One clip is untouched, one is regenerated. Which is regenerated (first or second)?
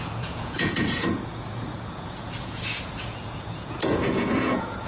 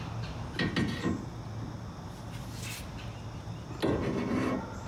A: first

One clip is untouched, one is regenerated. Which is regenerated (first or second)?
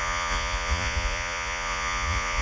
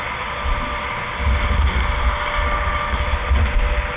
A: first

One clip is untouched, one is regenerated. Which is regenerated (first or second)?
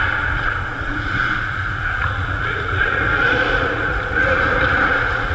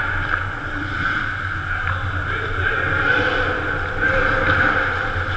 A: first